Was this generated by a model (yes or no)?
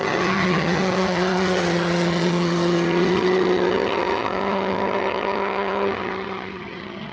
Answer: yes